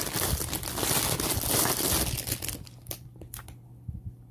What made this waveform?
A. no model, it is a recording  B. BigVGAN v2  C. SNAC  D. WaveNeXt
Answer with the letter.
A